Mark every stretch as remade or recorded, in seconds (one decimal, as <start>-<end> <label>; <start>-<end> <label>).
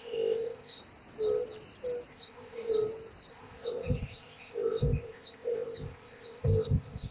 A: 0.0-0.8 remade; 0.8-2.1 recorded; 2.1-2.7 remade; 2.7-3.3 recorded; 3.3-7.1 remade